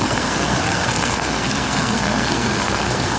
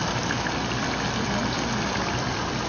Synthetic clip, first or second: first